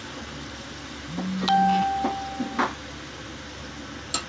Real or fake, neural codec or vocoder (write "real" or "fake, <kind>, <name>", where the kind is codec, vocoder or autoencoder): real